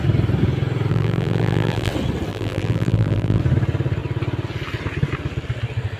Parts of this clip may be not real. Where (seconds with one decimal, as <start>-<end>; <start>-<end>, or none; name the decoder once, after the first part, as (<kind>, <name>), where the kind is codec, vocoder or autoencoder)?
0.9-1.9 (vocoder, BigVGAN v2); 2.3-3.4